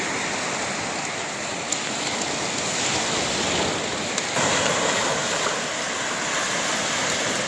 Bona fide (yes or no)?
yes